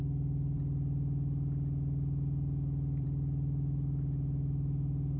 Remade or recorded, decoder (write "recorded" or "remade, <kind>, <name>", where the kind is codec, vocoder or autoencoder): recorded